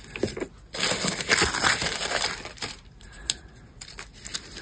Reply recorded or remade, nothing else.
recorded